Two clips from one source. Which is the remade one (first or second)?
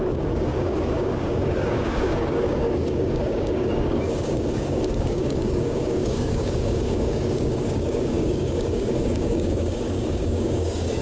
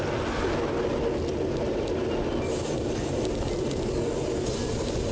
first